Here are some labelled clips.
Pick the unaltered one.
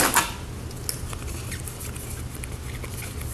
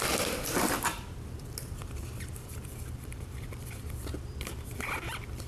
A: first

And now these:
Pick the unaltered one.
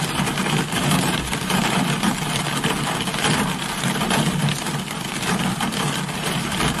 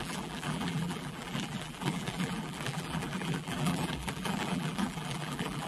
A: first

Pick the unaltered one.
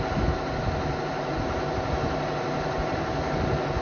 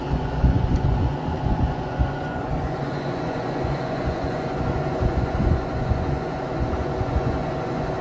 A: first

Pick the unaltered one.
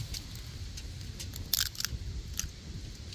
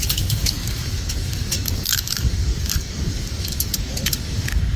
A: first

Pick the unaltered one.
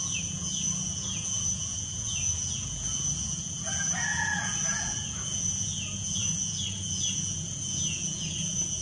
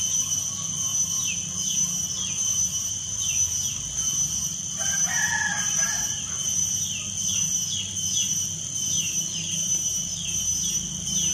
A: second